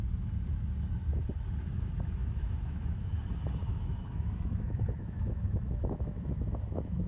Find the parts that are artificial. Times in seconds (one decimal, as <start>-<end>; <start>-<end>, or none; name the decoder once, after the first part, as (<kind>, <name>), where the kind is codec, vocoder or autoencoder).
2.2-3.1 (autoencoder, DAC-VAE); 3.6-7.1